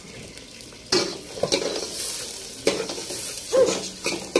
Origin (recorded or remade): recorded